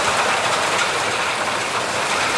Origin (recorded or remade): remade